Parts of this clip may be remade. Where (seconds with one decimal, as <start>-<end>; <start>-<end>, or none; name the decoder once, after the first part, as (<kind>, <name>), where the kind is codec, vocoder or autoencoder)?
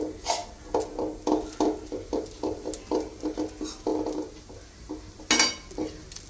none